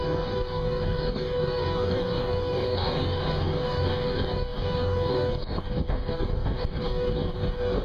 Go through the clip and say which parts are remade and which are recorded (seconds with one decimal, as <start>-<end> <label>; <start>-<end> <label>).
0.0-7.8 remade